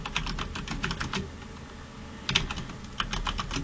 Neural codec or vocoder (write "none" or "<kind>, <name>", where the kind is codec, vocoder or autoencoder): none